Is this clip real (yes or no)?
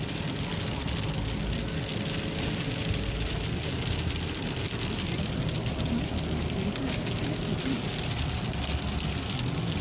yes